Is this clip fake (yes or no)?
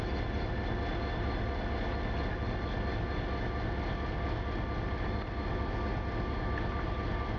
no